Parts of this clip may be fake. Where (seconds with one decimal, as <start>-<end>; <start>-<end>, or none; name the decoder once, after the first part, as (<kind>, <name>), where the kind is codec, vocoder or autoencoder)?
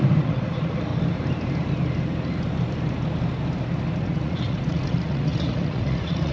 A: 0.0-0.9 (vocoder, Vocos); 4.0-6.3